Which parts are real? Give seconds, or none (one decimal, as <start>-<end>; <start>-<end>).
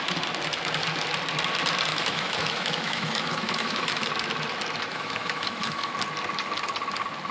0.0-1.9; 4.1-4.9; 5.9-7.3